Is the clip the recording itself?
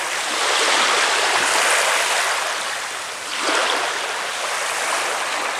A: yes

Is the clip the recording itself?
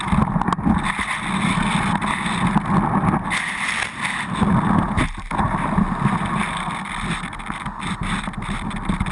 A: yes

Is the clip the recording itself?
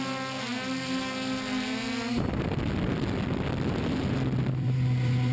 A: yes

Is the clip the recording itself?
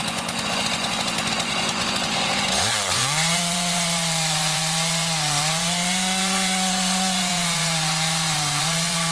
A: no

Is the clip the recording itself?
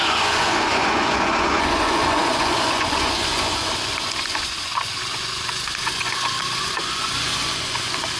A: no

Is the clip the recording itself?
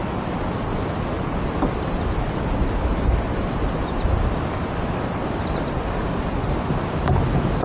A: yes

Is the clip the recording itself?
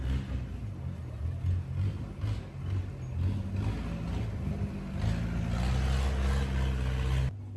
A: yes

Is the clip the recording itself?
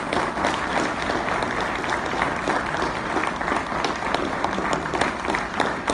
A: yes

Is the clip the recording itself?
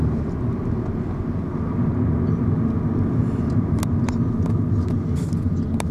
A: yes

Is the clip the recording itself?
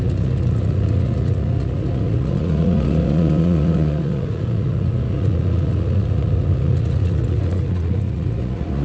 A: no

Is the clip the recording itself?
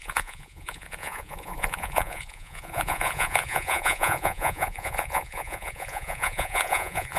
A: no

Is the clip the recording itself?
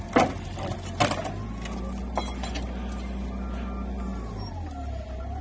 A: yes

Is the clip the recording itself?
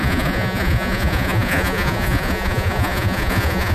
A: no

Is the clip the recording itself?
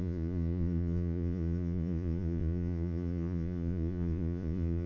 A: no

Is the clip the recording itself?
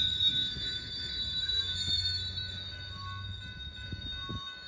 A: yes